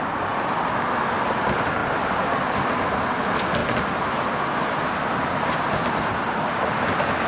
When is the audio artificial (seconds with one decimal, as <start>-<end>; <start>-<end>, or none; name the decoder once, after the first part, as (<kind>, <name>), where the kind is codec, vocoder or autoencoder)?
none